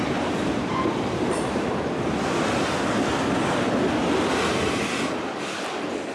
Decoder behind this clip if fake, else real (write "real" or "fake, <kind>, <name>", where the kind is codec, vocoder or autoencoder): real